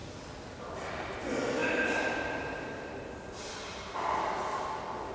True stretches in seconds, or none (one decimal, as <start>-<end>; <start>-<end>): 0.0-5.1